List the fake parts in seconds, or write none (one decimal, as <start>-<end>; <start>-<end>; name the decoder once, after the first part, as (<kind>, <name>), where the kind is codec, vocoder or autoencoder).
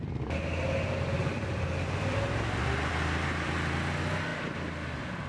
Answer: 1.2-2.9 (vocoder, BigVGAN v2)